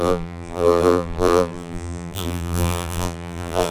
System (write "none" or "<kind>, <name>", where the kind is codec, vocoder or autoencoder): vocoder, BigVGAN v2